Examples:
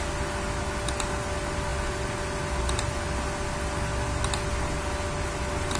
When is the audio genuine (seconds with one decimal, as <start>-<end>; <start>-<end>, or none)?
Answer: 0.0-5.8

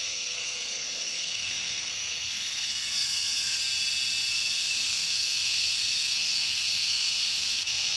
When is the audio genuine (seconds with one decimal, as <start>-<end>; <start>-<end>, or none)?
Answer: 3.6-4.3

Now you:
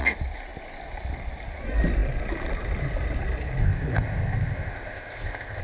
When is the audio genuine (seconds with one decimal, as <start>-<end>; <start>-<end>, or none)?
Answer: 0.0-3.6

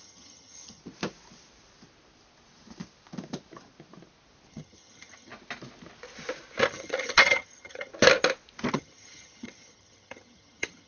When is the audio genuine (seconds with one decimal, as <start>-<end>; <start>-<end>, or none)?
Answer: 0.8-4.5; 5.3-6.7; 7.9-8.7

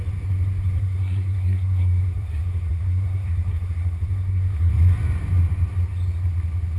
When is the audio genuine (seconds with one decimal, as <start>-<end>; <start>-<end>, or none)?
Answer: 0.0-0.8; 4.7-6.8

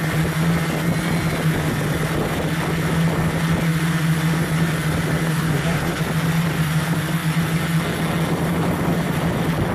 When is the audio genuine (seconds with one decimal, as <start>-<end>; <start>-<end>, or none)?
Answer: 0.0-5.2; 6.0-9.7

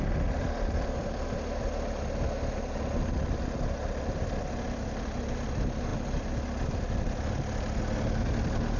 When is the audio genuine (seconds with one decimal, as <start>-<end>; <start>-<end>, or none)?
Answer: 0.0-8.8